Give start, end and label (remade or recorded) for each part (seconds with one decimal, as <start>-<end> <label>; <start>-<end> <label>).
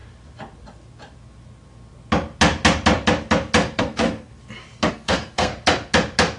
0.0-3.8 recorded; 3.8-4.3 remade; 4.3-4.9 recorded; 4.9-5.5 remade; 5.5-6.4 recorded